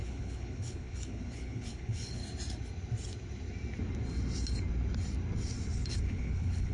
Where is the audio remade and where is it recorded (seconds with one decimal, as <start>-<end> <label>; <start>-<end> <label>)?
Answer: 0.0-2.2 remade; 2.2-6.0 recorded; 6.0-6.7 remade